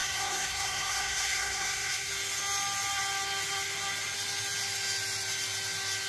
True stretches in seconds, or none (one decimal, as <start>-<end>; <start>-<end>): 2.1-6.1